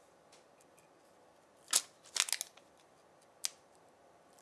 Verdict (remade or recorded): recorded